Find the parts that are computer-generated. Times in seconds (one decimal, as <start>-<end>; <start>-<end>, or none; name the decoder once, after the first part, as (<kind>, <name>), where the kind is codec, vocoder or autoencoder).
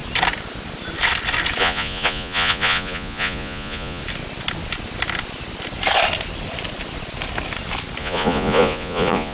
1.6-4.0 (vocoder, Vocos); 8.0-9.3